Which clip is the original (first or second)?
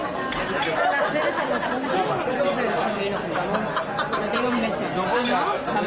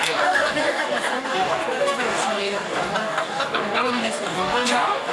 first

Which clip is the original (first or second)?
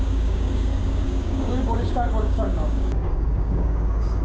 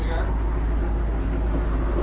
second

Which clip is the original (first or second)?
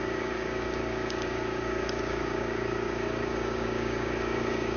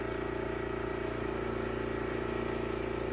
second